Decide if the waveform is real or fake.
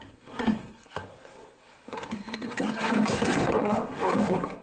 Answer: fake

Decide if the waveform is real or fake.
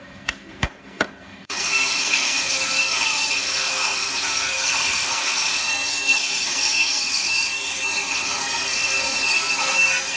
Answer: fake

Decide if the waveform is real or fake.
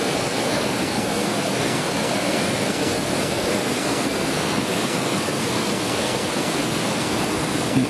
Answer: fake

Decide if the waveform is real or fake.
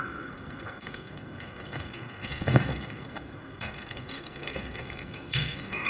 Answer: fake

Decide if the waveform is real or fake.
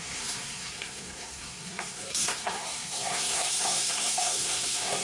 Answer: fake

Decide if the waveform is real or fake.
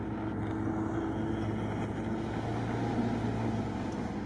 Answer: real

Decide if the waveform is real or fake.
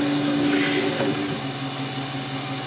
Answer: real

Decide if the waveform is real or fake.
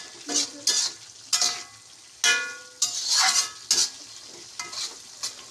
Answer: real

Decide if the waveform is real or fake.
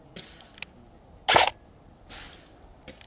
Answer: real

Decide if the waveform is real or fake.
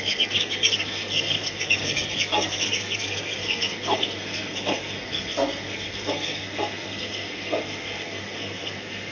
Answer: fake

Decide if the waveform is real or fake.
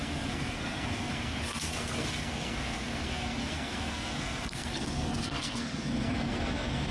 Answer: fake